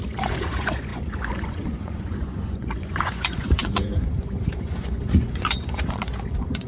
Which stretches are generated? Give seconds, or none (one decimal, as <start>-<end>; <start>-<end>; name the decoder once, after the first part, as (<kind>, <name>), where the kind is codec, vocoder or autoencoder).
0.0-6.7 (vocoder, Vocos)